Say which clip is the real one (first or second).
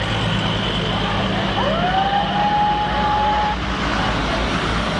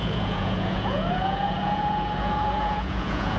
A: first